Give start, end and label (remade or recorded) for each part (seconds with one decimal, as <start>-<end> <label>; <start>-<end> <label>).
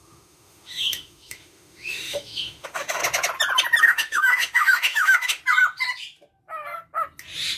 0.0-3.0 remade; 3.0-3.8 recorded; 3.8-5.4 remade; 5.4-7.6 recorded